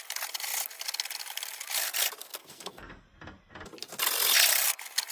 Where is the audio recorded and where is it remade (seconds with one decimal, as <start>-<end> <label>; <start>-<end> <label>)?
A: 0.0-2.2 recorded; 2.2-2.9 remade; 2.9-5.1 recorded